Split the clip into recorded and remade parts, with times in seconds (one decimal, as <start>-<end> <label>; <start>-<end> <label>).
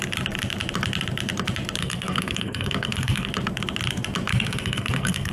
0.0-1.8 recorded; 1.8-3.3 remade; 3.3-4.3 recorded; 4.3-5.3 remade